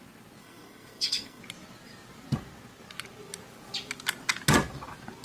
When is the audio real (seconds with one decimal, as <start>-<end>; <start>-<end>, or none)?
0.0-0.4; 1.4-5.2